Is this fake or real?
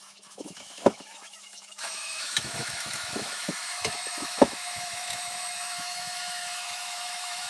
fake